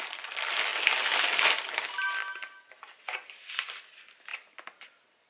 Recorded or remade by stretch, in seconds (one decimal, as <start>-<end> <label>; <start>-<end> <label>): 0.0-5.3 recorded